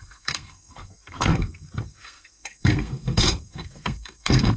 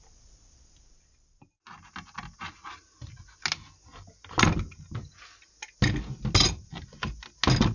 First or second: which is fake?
first